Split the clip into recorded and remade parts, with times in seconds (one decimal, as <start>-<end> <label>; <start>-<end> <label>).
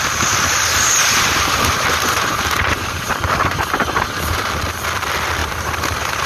0.0-1.0 recorded; 1.0-4.4 remade; 4.4-5.4 recorded; 5.4-6.3 remade